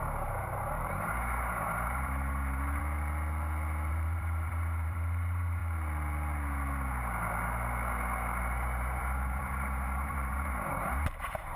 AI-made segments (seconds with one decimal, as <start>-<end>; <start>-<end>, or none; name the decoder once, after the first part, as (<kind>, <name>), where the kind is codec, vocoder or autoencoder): 0.0-2.8 (vocoder, BigVGAN v2); 3.9-5.6; 8.4-11.6